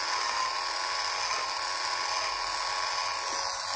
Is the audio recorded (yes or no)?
yes